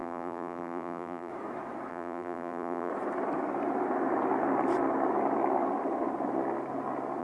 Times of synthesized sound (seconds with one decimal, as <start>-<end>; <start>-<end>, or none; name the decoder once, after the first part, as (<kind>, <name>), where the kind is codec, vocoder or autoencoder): 0.0-1.3 (vocoder, BigVGAN v2); 1.9-2.9